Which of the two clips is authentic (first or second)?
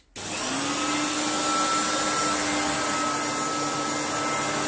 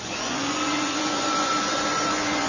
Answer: first